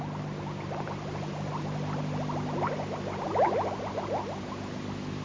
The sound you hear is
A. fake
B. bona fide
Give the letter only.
B